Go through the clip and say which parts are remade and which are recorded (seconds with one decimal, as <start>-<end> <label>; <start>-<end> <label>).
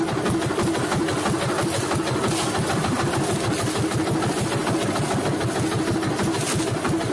0.0-7.1 recorded